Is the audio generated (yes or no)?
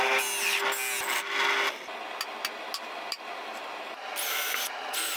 no